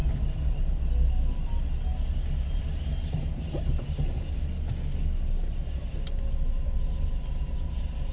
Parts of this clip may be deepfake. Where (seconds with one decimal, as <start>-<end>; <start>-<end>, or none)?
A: none